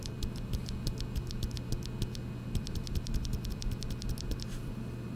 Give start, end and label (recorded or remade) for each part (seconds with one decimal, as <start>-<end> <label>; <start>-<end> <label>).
0.0-0.6 remade; 0.6-2.6 recorded; 2.6-5.2 remade